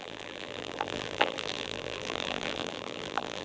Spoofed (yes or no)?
yes